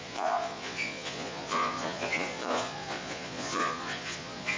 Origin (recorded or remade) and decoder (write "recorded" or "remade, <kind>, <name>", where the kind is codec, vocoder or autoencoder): remade, vocoder, Vocos